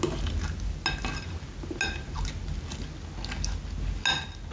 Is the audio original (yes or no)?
yes